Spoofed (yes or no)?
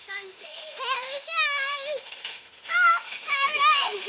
yes